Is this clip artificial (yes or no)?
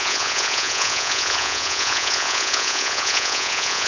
yes